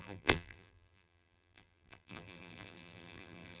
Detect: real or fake fake